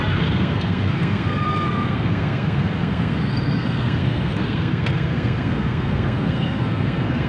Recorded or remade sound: remade